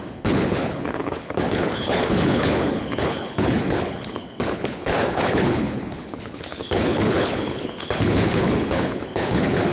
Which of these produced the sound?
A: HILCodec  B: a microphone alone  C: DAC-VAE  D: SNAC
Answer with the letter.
A